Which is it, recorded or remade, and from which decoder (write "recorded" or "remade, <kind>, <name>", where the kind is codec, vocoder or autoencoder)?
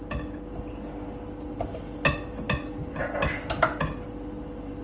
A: recorded